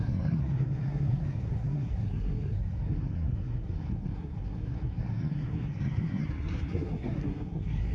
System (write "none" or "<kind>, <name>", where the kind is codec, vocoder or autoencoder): codec, SNAC